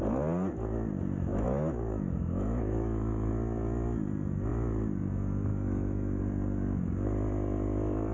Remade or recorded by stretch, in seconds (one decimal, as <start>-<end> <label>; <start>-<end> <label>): 0.0-1.3 recorded; 1.3-3.3 remade; 3.3-5.5 recorded; 5.5-6.2 remade; 6.2-8.1 recorded